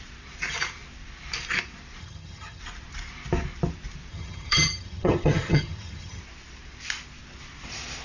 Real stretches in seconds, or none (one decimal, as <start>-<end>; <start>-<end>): 0.0-2.0; 2.6-4.1; 6.2-8.0